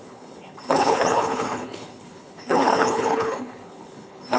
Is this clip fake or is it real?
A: fake